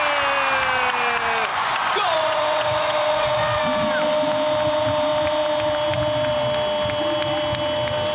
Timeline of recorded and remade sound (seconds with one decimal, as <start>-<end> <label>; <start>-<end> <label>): 0.0-1.5 recorded; 1.5-3.6 remade; 3.6-8.1 recorded